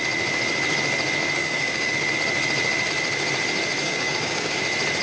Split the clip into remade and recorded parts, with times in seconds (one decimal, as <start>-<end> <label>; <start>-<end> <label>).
0.0-1.4 recorded; 1.4-1.9 remade; 1.9-3.8 recorded; 3.8-4.6 remade; 4.6-5.0 recorded

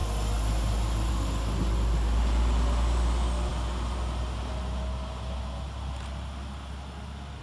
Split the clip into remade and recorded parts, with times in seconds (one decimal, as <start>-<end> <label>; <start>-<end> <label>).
0.0-7.4 recorded

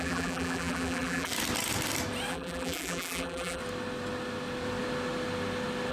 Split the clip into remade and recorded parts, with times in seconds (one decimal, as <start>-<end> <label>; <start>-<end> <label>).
0.0-1.3 remade; 1.3-2.3 recorded; 2.3-3.6 remade; 3.6-5.9 recorded

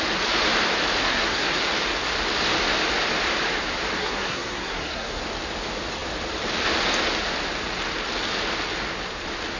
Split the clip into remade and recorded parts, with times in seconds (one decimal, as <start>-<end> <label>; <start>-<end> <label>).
0.0-1.0 recorded; 1.0-1.5 remade; 1.5-4.0 recorded; 4.0-5.2 remade; 5.2-9.6 recorded